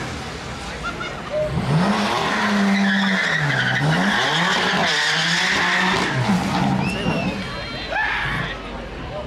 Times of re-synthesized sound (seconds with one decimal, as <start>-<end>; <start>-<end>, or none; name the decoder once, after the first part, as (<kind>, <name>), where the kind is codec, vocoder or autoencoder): none